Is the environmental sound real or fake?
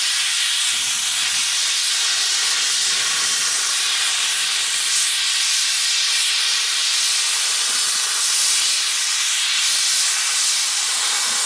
real